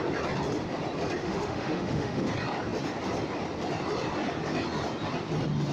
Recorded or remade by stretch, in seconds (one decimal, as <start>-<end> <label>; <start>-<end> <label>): 0.0-1.2 recorded; 1.2-2.3 remade; 2.3-5.7 recorded